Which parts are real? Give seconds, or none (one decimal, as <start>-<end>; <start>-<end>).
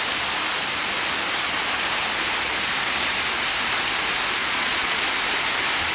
0.0-4.4; 5.0-5.9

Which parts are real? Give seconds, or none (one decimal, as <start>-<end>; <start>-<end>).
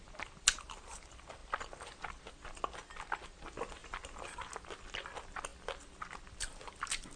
0.0-7.2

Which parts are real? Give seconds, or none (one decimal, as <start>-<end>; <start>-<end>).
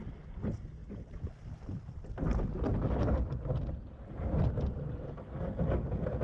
0.0-6.2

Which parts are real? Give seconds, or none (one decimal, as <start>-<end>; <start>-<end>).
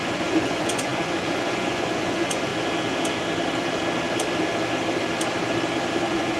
2.5-6.0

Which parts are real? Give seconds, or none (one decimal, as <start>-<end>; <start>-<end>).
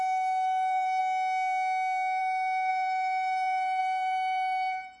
1.0-2.2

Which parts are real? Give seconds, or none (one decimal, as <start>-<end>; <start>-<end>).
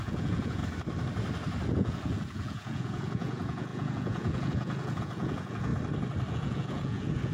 0.6-1.7; 5.7-6.3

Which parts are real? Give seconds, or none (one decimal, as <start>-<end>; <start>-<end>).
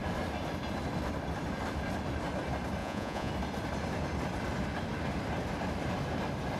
0.0-2.8; 3.3-6.6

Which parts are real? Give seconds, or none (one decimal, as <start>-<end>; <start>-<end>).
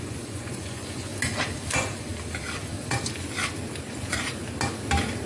1.1-1.7; 2.1-3.9; 4.4-5.3